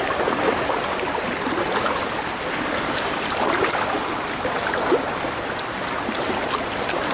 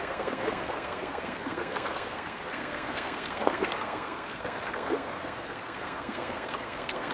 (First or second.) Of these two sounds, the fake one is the second